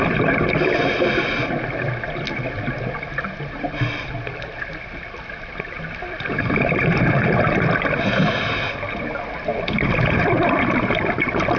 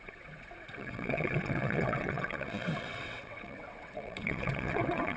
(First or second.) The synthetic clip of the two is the second